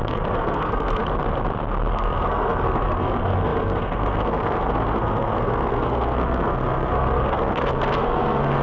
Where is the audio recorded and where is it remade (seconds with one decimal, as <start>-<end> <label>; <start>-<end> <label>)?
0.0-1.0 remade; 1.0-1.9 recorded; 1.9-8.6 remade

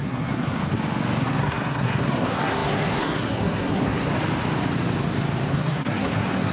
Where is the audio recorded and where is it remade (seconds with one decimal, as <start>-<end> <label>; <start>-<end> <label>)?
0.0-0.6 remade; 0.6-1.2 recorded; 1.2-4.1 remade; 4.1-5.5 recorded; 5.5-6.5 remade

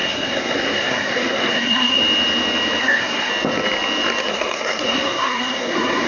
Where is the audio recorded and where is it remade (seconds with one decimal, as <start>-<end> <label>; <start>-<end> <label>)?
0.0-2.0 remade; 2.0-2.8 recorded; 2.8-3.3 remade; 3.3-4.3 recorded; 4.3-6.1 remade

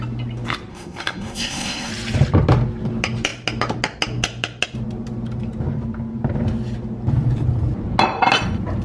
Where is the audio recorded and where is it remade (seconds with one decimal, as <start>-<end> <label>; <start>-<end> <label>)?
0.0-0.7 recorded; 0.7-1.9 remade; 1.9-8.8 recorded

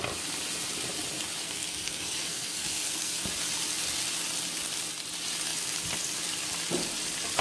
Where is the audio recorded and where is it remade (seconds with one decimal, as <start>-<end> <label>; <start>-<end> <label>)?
0.0-1.4 recorded; 1.4-3.2 remade; 3.2-7.4 recorded